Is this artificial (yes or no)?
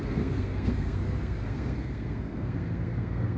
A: yes